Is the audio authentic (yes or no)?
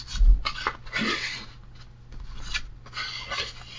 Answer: yes